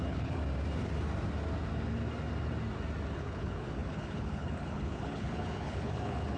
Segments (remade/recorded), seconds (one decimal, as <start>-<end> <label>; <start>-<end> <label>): 0.0-0.4 remade; 0.4-3.2 recorded; 3.2-6.4 remade